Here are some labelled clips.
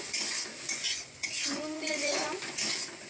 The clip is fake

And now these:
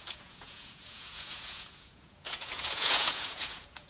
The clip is fake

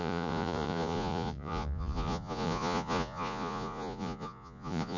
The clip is fake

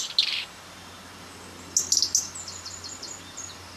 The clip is real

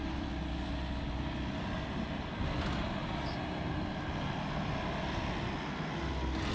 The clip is real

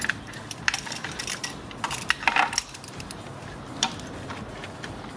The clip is real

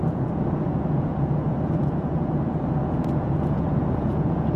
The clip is fake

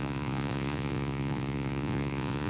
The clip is fake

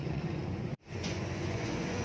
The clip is fake